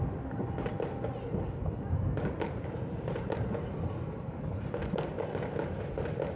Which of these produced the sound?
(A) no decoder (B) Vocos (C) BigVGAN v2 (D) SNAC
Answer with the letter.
A